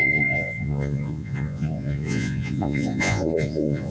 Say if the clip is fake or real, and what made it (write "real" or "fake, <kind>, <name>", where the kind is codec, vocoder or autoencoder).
fake, vocoder, Vocos